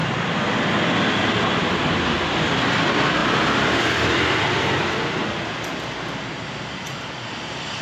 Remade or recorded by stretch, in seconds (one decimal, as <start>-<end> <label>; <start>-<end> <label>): 0.0-2.6 recorded; 2.6-5.2 remade; 5.2-7.8 recorded